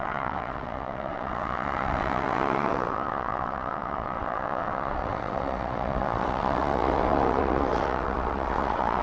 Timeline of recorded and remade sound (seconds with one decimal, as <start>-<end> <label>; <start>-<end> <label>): 0.0-9.0 remade